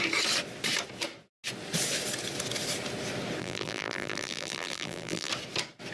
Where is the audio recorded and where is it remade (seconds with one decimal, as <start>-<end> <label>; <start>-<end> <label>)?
0.0-3.4 recorded; 3.4-5.3 remade; 5.3-5.9 recorded